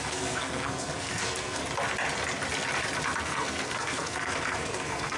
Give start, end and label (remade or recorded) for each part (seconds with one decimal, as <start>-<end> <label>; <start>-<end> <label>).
0.0-1.6 remade; 1.6-3.2 recorded; 3.2-5.2 remade